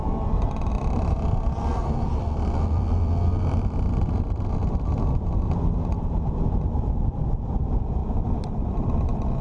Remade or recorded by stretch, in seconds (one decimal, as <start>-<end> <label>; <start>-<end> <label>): 0.0-8.0 remade; 8.0-8.7 recorded; 8.7-9.4 remade